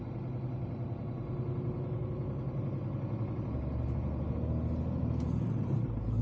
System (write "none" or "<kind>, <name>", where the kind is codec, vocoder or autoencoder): none